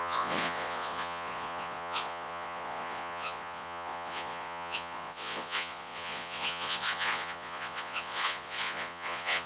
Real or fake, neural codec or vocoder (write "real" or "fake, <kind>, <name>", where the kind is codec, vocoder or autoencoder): fake, vocoder, Vocos